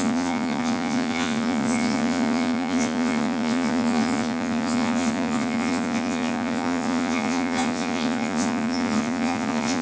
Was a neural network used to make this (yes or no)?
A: yes